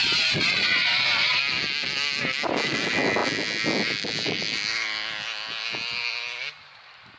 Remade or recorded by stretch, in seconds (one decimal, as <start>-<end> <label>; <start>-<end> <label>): 0.0-1.4 remade; 1.4-7.2 recorded